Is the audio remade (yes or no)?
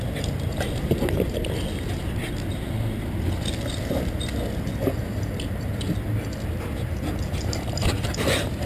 no